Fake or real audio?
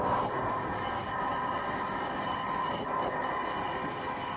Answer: real